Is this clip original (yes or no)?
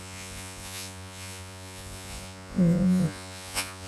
no